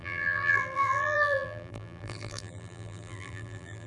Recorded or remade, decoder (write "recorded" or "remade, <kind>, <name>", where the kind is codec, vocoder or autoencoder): remade, vocoder, BigVGAN v2